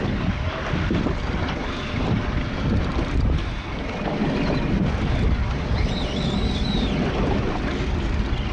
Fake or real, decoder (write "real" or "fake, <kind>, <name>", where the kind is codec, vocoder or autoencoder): real